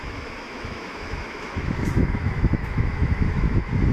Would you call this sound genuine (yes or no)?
no